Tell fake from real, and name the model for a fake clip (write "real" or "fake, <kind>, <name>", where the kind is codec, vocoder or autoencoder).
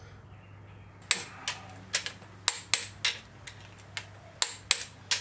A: real